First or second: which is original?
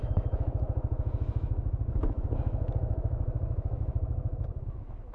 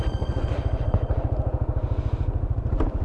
second